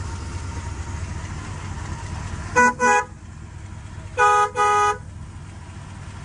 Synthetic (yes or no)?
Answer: no